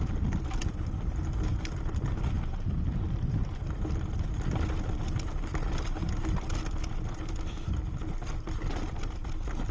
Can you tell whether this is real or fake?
real